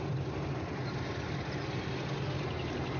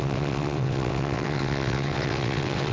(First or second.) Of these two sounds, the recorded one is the first